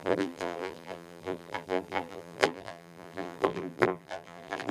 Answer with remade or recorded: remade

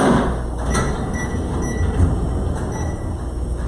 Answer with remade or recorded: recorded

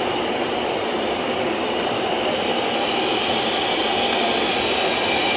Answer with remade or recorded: recorded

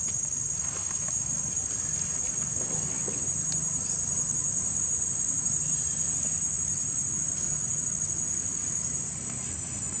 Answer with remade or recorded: recorded